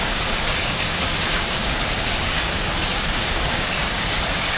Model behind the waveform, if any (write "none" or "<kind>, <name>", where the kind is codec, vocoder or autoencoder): codec, DAC